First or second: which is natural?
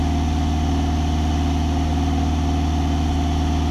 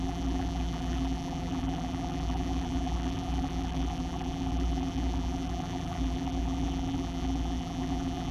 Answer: first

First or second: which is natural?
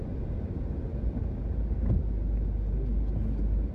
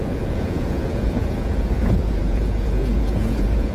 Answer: first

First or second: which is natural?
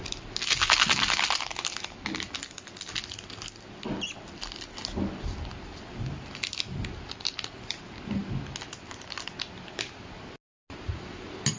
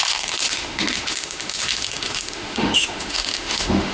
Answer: first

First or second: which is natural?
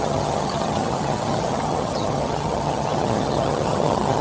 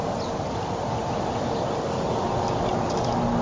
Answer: second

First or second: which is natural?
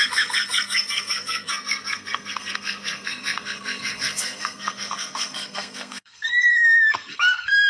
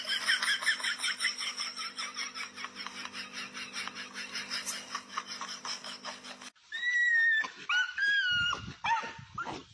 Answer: second